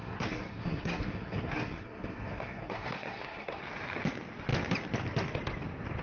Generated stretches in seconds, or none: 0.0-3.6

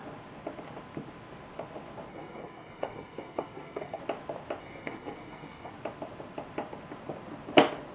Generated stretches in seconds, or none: 2.1-4.0; 4.6-5.7

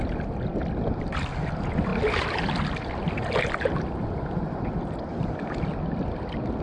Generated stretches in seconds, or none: none

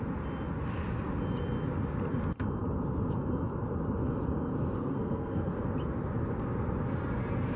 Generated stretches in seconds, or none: 4.8-5.5